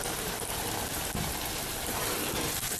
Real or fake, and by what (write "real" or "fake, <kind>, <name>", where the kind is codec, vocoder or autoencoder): fake, vocoder, BigVGAN v2